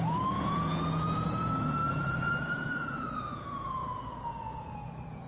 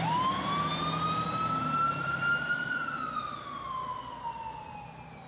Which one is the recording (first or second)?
second